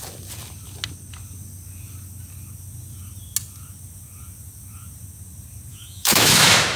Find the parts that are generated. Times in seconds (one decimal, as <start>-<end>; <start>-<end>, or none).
5.7-6.8